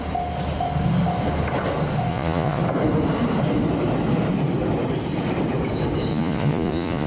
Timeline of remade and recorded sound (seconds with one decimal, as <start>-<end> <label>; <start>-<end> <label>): 0.0-2.1 recorded; 2.1-2.6 remade; 2.6-6.1 recorded; 6.1-7.1 remade